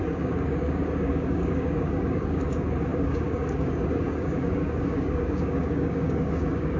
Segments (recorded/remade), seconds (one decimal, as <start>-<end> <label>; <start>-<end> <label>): 0.0-6.8 remade